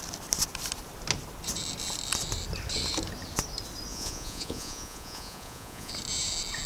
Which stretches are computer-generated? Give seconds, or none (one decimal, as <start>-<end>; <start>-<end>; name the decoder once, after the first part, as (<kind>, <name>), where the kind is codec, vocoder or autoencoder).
3.9-5.9 (vocoder, Vocos)